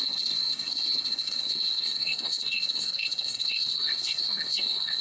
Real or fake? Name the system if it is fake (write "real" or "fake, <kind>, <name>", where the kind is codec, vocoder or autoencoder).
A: fake, codec, SNAC